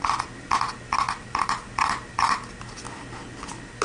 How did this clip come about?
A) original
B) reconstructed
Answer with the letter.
A